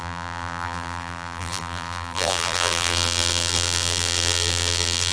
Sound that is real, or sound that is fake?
fake